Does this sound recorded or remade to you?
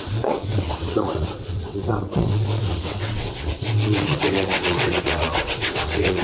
remade